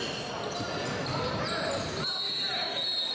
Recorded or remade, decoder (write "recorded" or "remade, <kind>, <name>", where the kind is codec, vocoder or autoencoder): recorded